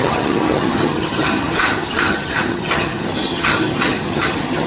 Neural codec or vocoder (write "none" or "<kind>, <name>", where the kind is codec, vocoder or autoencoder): vocoder, HiFi-GAN